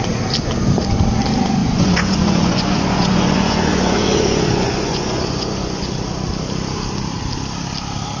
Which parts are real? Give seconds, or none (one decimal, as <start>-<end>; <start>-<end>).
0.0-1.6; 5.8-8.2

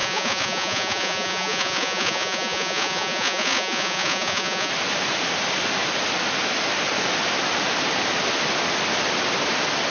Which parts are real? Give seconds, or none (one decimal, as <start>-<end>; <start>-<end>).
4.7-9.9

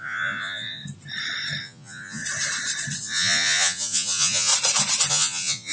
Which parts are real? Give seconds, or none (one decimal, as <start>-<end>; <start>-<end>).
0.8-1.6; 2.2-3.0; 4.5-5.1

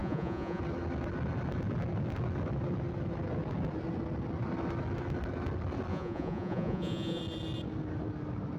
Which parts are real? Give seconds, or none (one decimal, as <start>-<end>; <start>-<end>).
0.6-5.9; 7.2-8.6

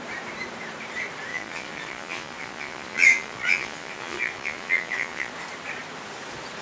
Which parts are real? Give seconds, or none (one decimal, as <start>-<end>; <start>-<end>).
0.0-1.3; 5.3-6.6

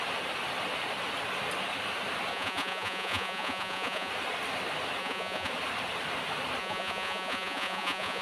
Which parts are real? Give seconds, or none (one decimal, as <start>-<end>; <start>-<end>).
0.0-2.3; 4.1-5.0; 5.5-6.6

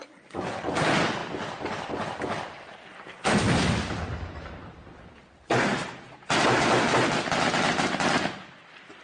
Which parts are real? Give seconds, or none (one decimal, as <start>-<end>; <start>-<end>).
0.6-9.0

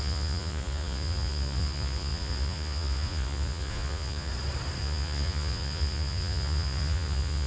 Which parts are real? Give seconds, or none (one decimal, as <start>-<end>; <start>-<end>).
4.3-4.8